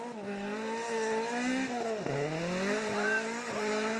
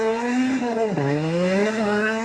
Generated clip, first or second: second